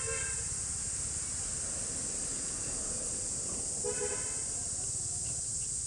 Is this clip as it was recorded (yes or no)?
yes